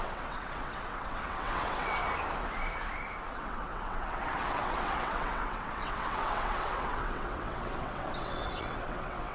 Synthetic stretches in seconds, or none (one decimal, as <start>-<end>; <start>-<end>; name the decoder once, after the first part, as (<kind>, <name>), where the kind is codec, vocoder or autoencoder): 0.0-2.0 (vocoder, WaveNeXt); 3.3-9.3